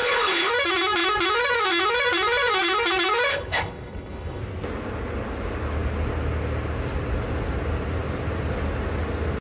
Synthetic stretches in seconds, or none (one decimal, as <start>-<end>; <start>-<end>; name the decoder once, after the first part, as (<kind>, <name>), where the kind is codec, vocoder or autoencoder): 0.0-0.5 (codec, HILCodec); 3.3-4.4